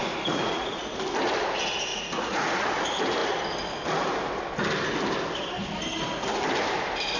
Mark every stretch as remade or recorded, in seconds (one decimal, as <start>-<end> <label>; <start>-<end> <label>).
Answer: 0.0-0.8 remade; 0.8-1.9 recorded; 1.9-2.7 remade; 2.7-7.2 recorded